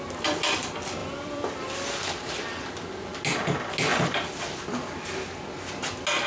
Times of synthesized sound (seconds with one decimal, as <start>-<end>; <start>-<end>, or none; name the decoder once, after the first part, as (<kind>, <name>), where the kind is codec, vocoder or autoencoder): 1.0-2.6 (vocoder, BigVGAN v2); 3.9-4.4